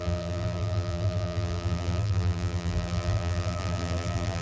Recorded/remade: remade